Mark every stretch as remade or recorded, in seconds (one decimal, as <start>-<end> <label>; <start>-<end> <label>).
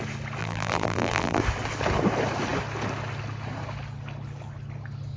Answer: 0.0-0.4 recorded; 0.4-1.4 remade; 1.4-5.2 recorded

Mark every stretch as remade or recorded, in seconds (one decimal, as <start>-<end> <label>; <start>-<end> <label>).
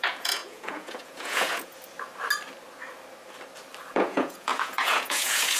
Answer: 0.0-1.7 remade; 1.7-3.9 recorded; 3.9-5.6 remade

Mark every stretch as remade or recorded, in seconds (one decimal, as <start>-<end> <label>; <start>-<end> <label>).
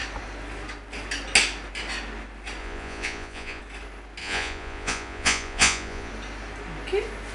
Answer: 0.0-2.6 recorded; 2.6-3.6 remade; 3.6-4.2 recorded; 4.2-6.1 remade; 6.1-7.3 recorded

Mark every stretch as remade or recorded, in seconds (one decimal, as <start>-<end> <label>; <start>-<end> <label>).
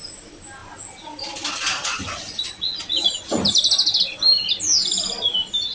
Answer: 0.0-5.7 recorded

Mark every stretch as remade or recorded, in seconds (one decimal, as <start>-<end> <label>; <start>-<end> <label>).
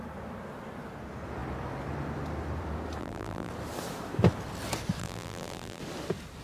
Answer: 0.0-3.0 recorded; 3.0-3.5 remade; 3.5-5.0 recorded; 5.0-5.8 remade; 5.8-6.4 recorded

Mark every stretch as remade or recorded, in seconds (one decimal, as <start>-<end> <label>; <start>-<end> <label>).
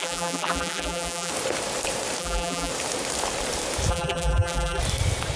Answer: 0.0-1.3 remade; 1.3-2.2 recorded; 2.2-2.7 remade; 2.7-3.9 recorded; 3.9-4.8 remade; 4.8-5.4 recorded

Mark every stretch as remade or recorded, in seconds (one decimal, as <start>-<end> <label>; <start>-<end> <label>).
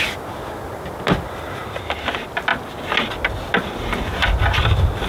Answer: 0.0-5.1 recorded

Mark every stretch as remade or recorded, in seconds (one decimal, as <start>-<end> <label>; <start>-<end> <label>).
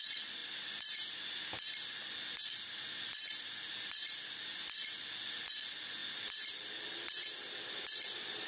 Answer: 0.0-8.5 recorded